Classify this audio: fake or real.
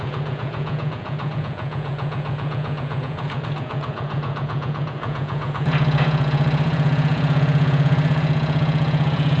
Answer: fake